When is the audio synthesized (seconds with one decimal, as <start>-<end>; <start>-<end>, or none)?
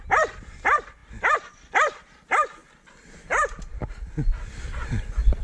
0.0-5.4